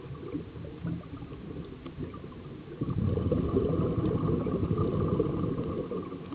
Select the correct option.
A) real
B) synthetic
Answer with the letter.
A